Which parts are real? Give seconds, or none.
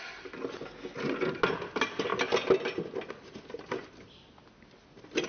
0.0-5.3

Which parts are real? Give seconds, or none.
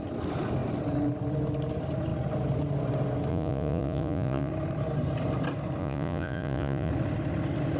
0.0-3.3; 4.5-5.8; 6.9-7.8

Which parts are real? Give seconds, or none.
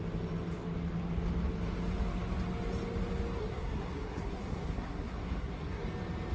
0.0-3.4; 5.8-6.3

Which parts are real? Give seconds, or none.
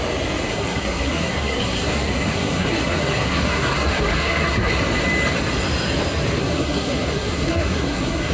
0.0-0.5; 4.7-6.4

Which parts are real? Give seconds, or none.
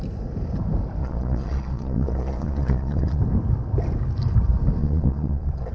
0.0-1.0; 3.2-4.8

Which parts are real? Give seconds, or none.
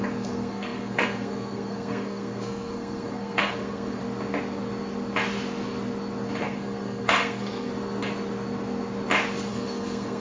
4.0-6.4; 7.7-9.5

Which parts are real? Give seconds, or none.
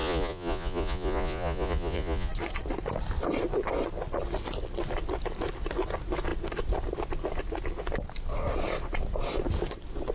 2.3-10.1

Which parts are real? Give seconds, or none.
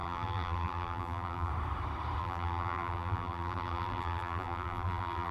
1.5-2.2